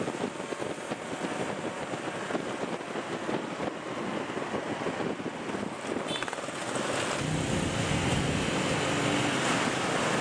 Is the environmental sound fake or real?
real